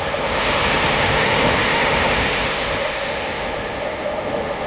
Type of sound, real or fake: fake